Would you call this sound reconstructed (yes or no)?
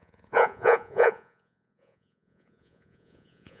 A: yes